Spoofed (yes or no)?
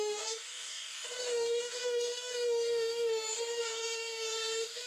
yes